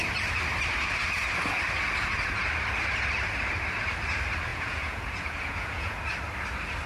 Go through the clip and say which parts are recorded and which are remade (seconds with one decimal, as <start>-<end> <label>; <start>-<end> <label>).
0.0-4.5 recorded; 4.5-6.0 remade; 6.0-6.9 recorded